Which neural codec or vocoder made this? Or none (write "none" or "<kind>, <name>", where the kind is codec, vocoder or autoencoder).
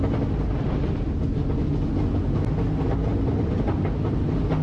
none